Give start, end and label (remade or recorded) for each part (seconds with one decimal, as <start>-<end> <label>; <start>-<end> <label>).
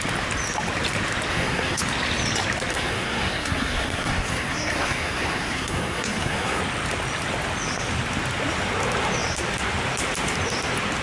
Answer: 0.0-1.3 recorded; 1.3-1.8 remade; 1.8-2.7 recorded; 2.7-6.6 remade; 6.6-11.0 recorded